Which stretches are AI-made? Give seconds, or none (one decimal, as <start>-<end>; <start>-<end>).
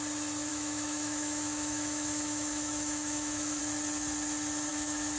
0.5-3.6; 4.7-5.2